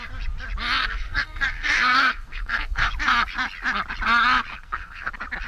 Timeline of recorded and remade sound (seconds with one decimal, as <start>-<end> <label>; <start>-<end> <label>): 0.0-0.8 recorded; 0.8-2.9 remade; 2.9-4.5 recorded; 4.5-5.1 remade; 5.1-5.5 recorded